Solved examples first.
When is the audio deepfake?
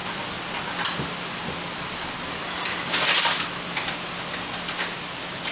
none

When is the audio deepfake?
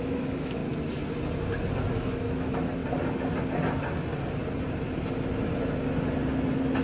0.0-0.6 (autoencoder, DAC-VAE); 1.9-2.8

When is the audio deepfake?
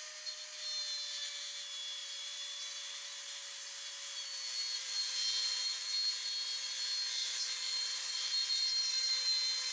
2.0-2.6 (vocoder, BigVGAN v2); 7.2-9.2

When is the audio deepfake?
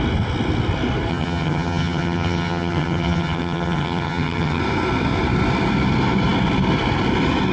1.1-4.6 (vocoder, HiFi-GAN)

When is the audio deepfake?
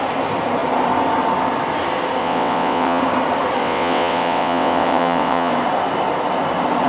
2.2-3.0 (vocoder, WaveNeXt); 3.6-5.5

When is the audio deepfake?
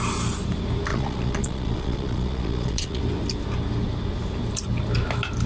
0.9-3.0 (vocoder, Vocos)